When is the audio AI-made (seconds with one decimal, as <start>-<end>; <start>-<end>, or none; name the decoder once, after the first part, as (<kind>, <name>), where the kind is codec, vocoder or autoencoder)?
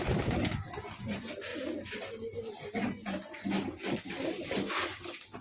none